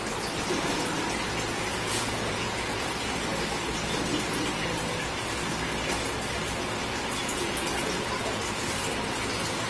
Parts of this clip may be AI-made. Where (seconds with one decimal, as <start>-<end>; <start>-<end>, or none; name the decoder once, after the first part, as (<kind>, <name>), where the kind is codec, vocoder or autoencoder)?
1.5-2.9 (vocoder, Vocos); 7.2-8.4